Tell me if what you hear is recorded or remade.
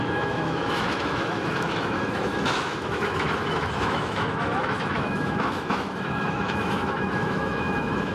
remade